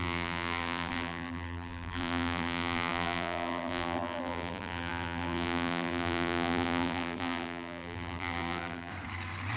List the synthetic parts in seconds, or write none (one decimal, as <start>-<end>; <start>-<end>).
0.0-8.9